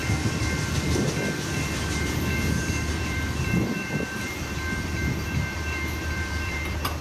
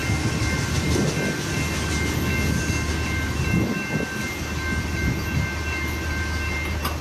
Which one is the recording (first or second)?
second